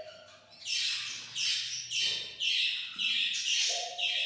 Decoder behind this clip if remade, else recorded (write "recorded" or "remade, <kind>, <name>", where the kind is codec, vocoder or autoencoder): recorded